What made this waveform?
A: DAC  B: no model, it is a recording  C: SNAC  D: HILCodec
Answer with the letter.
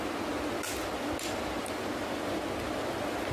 B